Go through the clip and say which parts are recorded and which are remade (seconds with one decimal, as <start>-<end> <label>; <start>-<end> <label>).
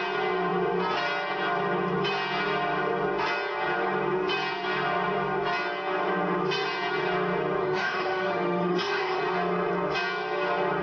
0.0-7.6 recorded; 7.6-9.2 remade; 9.2-10.8 recorded